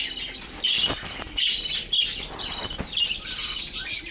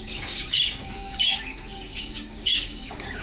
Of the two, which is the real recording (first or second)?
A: first